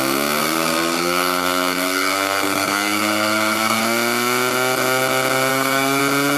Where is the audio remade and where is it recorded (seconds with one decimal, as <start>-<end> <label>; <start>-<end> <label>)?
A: 0.0-0.4 recorded; 0.4-3.8 remade; 3.8-5.5 recorded; 5.5-6.0 remade; 6.0-6.4 recorded